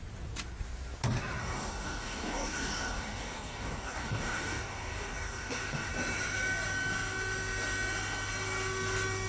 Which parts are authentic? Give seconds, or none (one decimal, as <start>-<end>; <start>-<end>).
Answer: 0.0-1.4; 5.9-9.3